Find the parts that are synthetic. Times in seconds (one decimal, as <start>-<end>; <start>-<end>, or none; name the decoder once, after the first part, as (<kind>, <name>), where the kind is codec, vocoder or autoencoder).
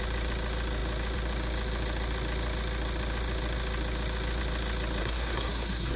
5.0-6.0 (codec, SNAC)